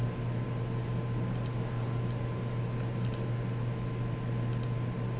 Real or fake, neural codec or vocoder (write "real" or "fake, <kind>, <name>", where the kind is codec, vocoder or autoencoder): real